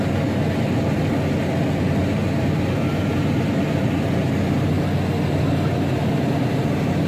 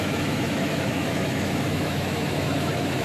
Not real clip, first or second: second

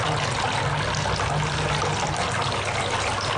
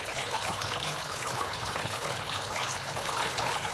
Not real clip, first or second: second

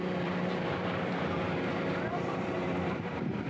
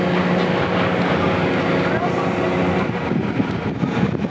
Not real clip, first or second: first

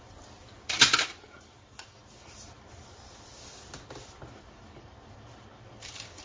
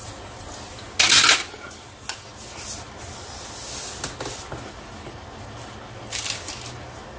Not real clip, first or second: first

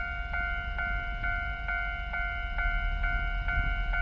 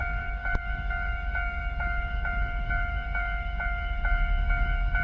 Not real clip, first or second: second